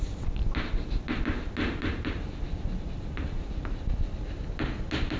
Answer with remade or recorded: recorded